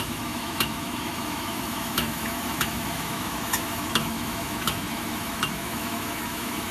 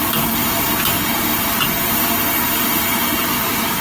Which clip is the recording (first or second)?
second